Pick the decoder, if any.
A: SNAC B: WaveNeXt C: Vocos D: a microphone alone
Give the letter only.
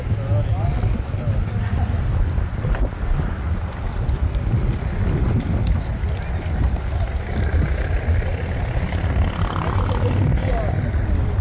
D